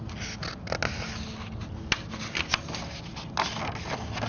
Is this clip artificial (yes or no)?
no